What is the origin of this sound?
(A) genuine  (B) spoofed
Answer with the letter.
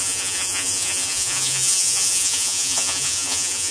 B